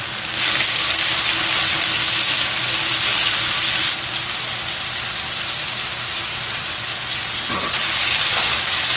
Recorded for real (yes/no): yes